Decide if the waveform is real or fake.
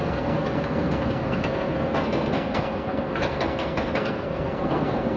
fake